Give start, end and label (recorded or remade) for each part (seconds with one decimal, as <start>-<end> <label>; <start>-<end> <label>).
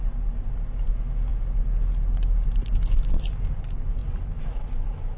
0.0-5.2 recorded